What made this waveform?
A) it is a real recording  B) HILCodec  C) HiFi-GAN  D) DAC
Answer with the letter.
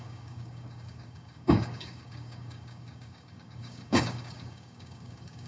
D